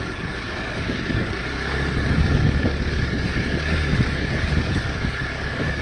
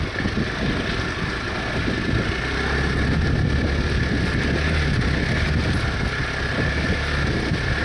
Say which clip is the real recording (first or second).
second